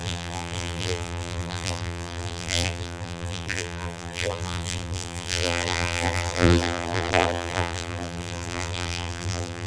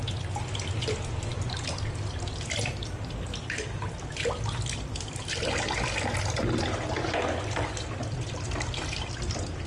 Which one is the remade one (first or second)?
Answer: first